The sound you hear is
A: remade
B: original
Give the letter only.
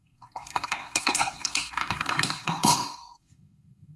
A